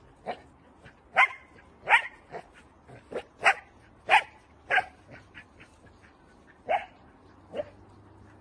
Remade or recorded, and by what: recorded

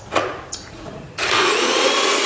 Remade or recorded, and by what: remade, vocoder, Vocos